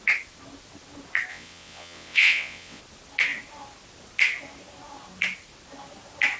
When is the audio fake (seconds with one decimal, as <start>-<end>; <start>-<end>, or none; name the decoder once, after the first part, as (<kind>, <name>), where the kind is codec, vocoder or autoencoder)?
1.3-2.8 (vocoder, WaveNeXt)

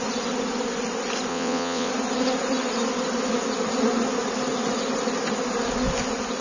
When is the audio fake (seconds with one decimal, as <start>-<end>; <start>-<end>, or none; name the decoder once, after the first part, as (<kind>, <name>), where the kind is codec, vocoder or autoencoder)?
1.3-1.9 (vocoder, WaveNeXt)

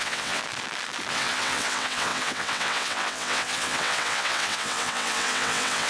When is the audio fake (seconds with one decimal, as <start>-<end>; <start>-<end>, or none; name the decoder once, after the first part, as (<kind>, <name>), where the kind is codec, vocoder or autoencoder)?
0.0-0.4 (vocoder, WaveNeXt); 1.1-5.9

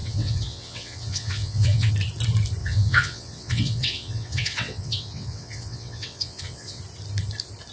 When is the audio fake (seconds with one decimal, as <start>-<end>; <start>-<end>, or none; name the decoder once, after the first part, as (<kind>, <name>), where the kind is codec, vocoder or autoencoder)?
0.0-1.9 (vocoder, WaveNeXt); 2.6-6.8

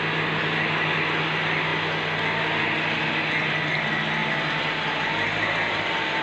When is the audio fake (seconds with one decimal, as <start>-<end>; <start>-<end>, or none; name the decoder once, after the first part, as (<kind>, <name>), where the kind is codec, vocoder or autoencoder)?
none

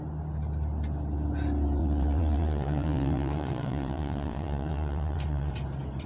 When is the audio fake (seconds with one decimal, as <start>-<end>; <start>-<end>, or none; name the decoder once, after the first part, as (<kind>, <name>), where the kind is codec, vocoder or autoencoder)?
1.8-5.5 (vocoder, WaveNeXt)

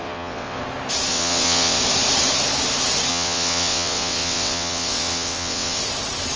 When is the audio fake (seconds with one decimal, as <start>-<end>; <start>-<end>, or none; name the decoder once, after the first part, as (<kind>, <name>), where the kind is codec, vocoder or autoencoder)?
0.0-0.6 (vocoder, WaveNeXt); 1.1-1.8; 3.1-5.8